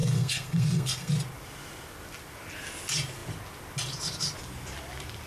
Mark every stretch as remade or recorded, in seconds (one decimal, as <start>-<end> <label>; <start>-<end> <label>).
0.0-1.1 remade; 1.1-5.3 recorded